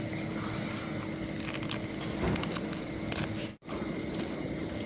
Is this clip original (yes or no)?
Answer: yes